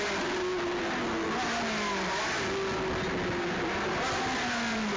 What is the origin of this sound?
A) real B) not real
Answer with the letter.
A